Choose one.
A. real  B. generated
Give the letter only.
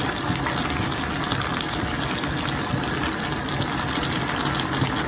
A